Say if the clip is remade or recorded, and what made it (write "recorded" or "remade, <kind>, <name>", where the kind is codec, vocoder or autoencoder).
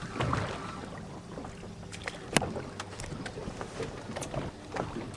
recorded